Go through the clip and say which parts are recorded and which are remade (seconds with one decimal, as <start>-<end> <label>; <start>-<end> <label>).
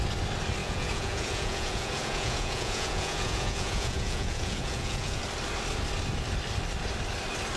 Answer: 0.0-0.6 recorded; 0.6-5.2 remade; 5.2-7.6 recorded